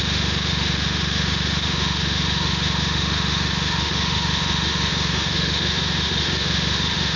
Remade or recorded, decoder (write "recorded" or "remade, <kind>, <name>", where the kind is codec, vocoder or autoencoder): remade, autoencoder, DAC-VAE